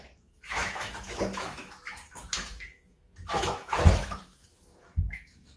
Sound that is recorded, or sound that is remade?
remade